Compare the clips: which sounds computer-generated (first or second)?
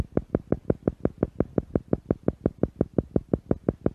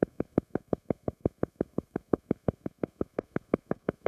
second